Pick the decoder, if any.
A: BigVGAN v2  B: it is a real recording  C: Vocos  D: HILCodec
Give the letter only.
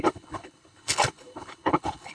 D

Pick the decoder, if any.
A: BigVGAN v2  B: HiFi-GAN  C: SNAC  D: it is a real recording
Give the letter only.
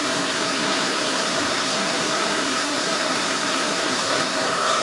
C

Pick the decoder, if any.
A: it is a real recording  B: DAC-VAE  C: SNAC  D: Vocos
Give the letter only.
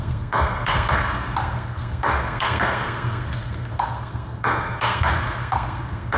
C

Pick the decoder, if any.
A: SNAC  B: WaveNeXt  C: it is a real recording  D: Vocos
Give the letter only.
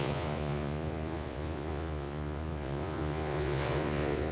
D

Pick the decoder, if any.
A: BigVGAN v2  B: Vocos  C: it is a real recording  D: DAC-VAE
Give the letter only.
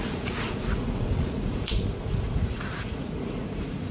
B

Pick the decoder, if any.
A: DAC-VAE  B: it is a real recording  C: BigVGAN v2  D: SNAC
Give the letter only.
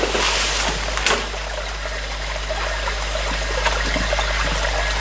B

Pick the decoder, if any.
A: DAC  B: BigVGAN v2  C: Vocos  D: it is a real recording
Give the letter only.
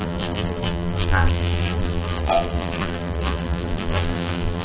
B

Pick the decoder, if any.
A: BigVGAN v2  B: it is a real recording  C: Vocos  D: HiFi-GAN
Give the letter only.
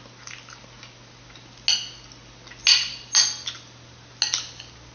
B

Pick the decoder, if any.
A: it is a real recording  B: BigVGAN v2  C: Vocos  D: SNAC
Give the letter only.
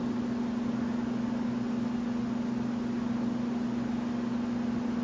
A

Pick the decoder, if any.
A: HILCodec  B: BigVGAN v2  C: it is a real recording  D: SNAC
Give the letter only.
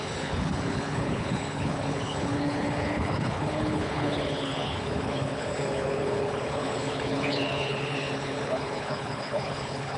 A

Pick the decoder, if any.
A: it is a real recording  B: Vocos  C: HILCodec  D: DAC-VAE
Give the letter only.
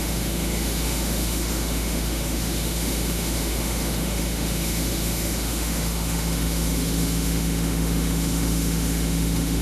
D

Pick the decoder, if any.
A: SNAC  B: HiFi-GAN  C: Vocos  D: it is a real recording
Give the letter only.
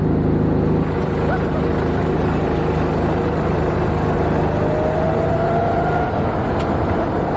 D